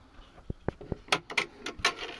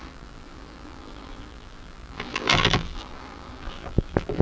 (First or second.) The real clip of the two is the first